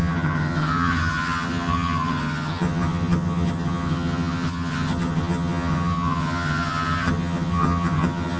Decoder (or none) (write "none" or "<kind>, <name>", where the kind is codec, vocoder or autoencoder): vocoder, HiFi-GAN